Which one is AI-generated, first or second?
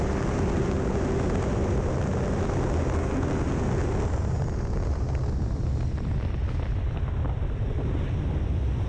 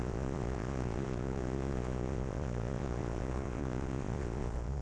second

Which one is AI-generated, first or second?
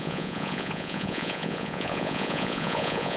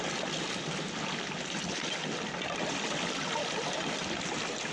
first